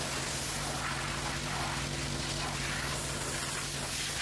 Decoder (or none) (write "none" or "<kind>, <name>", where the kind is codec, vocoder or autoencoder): none